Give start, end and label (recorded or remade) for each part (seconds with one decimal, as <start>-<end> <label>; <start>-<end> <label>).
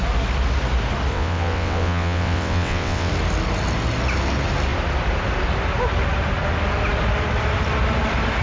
0.0-1.1 recorded; 1.1-3.1 remade; 3.1-8.4 recorded